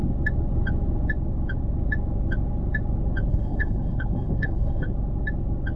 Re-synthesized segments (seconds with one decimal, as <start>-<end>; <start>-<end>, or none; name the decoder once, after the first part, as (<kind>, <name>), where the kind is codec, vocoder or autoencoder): 3.3-4.9 (codec, HILCodec)